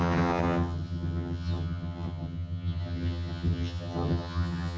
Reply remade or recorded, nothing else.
remade